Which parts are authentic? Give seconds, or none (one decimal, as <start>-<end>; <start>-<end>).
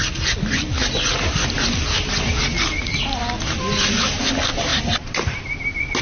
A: 0.0-6.0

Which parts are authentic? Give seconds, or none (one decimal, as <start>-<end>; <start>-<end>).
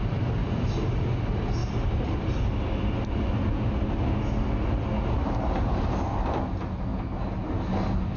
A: 0.0-8.2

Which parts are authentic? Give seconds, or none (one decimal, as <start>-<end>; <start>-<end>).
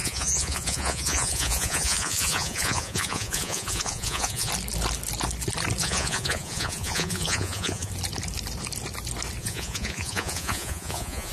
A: 4.5-5.8; 7.9-9.4